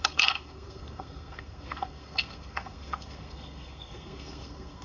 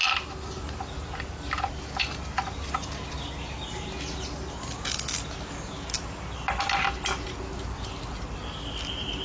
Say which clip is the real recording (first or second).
second